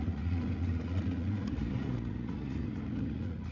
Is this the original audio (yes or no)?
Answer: no